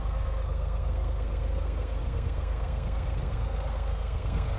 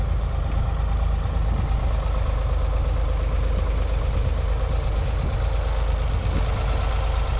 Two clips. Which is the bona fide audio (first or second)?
second